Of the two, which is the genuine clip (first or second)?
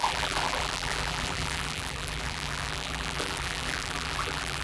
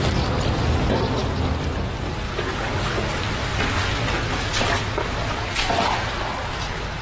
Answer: second